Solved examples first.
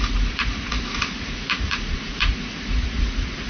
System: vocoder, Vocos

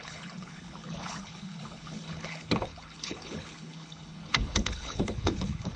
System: codec, HILCodec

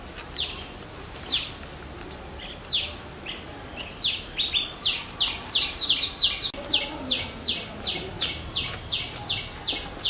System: none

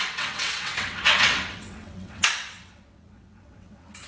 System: vocoder, WaveNeXt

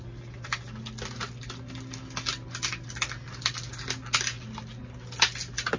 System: none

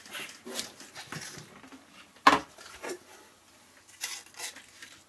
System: none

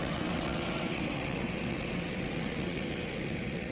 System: vocoder, WaveNeXt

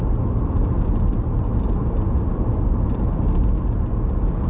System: none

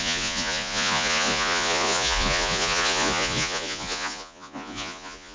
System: vocoder, Vocos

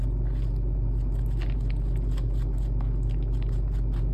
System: none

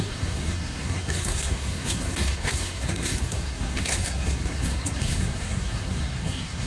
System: codec, SNAC